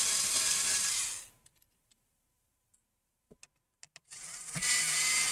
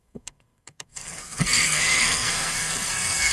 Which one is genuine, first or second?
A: first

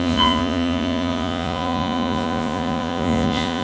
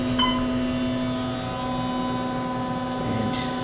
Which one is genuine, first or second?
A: second